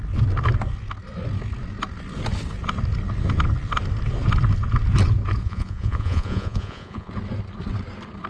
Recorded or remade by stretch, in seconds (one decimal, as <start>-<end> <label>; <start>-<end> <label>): 0.0-5.4 recorded; 5.4-7.1 remade; 7.1-8.3 recorded

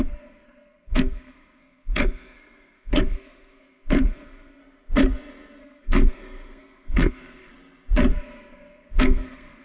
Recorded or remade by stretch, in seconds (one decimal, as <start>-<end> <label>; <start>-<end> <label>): 0.0-4.6 remade; 4.6-5.6 recorded; 5.6-7.5 remade; 7.5-8.1 recorded; 8.1-9.6 remade

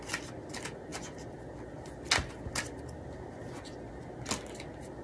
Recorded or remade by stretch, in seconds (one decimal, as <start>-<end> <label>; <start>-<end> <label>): 0.0-5.0 recorded

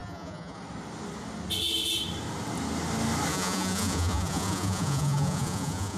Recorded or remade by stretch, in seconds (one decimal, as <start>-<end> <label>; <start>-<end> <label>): 0.0-0.6 remade; 0.6-3.3 recorded; 3.3-6.0 remade

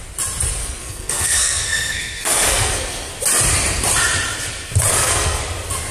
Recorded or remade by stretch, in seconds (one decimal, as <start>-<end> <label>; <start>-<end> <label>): 0.0-0.6 recorded; 0.6-3.1 remade; 3.1-4.9 recorded; 4.9-5.4 remade; 5.4-5.9 recorded

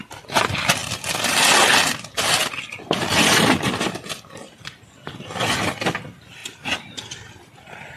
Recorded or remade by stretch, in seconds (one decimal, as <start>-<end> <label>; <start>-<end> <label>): 0.0-8.0 recorded

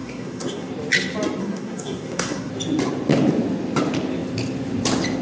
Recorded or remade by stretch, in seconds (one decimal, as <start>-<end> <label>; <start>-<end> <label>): 0.0-0.7 remade; 0.7-1.4 recorded; 1.4-2.5 remade; 2.5-5.2 recorded